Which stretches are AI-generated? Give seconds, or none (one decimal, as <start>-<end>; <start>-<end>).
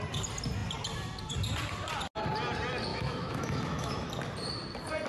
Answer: 2.9-4.1